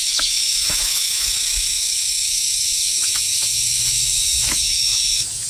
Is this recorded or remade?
remade